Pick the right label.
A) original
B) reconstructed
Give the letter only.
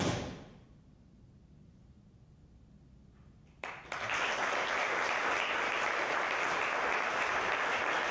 A